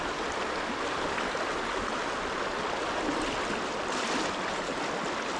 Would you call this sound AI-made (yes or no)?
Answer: no